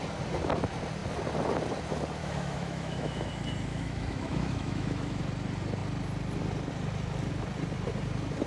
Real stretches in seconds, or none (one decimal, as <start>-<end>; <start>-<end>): 0.0-2.2; 3.3-3.7; 5.2-8.5

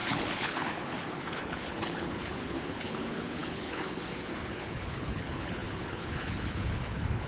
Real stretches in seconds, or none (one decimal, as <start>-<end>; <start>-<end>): none

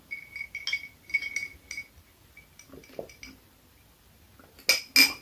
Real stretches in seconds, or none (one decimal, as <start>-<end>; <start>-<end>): 0.0-5.2

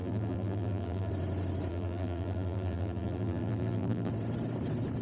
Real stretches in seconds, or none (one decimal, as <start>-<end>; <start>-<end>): 1.1-1.7; 4.1-5.0

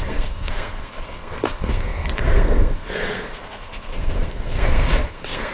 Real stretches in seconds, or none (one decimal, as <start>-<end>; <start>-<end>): none

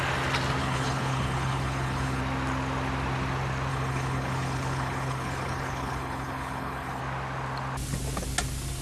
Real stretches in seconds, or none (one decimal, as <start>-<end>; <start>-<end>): 0.0-0.6; 2.2-3.7; 7.0-8.8

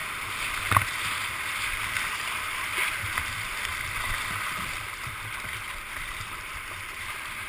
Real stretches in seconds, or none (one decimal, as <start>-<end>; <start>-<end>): 3.7-4.5